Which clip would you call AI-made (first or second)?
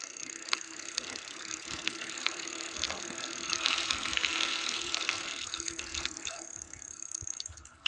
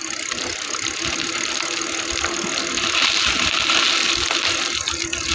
first